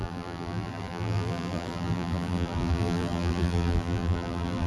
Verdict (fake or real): fake